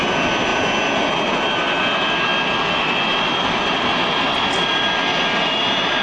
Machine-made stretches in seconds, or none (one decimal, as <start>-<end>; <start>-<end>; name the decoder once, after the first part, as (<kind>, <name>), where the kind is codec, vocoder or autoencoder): none